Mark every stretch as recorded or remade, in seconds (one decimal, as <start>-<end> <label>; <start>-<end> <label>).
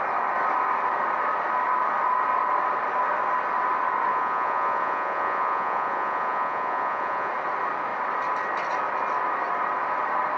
0.0-4.1 recorded; 4.1-7.3 remade; 7.3-10.4 recorded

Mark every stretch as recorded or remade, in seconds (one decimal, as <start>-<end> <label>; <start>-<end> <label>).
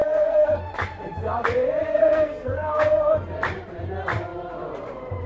0.0-0.7 remade; 0.7-1.9 recorded; 1.9-3.1 remade; 3.1-5.3 recorded